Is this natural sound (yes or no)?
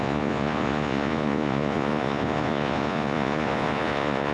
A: no